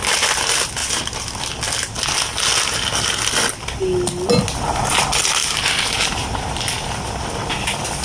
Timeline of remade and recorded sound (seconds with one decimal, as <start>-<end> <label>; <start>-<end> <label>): 0.0-0.8 recorded; 0.8-1.4 remade; 1.4-5.4 recorded; 5.4-6.6 remade; 6.6-8.0 recorded